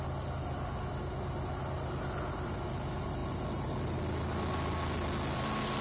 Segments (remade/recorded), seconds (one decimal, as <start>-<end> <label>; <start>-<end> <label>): 0.0-5.8 recorded